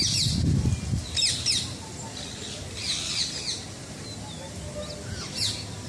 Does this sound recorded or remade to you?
recorded